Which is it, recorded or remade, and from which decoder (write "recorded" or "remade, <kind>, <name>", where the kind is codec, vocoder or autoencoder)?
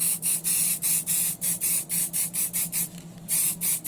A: recorded